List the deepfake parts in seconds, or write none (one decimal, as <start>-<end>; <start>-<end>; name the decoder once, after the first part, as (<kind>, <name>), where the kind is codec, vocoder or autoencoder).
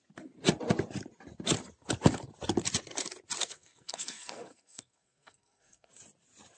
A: 3.4-5.9 (codec, SNAC)